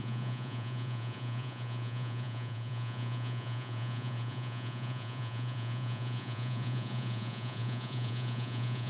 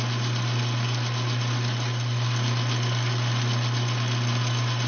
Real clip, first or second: second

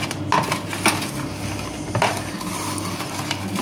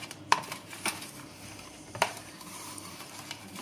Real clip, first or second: first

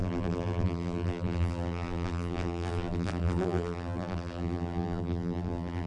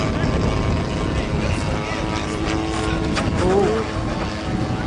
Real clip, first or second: second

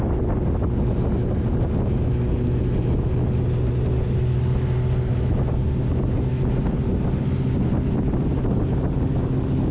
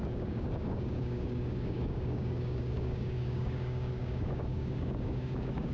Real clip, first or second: first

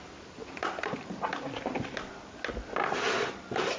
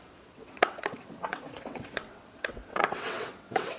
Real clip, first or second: first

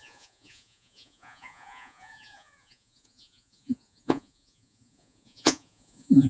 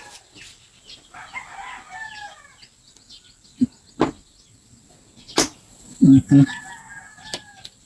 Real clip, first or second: second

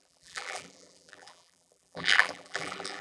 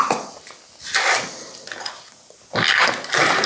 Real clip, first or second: second